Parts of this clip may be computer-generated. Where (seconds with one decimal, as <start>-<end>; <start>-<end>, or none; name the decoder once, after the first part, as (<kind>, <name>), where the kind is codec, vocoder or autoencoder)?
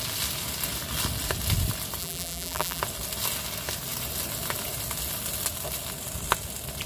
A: 2.0-2.8 (vocoder, BigVGAN v2)